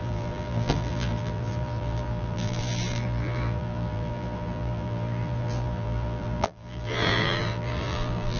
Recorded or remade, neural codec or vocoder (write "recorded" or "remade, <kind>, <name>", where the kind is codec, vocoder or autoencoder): remade, vocoder, BigVGAN v2